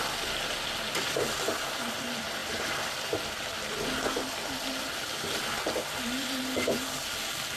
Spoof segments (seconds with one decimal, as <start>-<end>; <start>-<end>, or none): 2.4-6.4